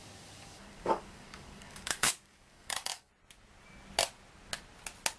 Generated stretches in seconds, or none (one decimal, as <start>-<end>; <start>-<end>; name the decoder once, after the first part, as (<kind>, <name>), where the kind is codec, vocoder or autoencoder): 0.0-3.1 (codec, DAC)

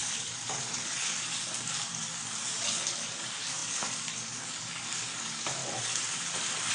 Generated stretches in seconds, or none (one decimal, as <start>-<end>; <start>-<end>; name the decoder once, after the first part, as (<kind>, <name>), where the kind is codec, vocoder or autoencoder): 0.0-5.6 (codec, DAC)